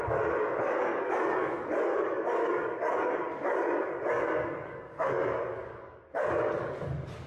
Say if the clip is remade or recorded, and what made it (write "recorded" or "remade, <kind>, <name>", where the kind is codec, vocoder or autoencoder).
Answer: remade, codec, DAC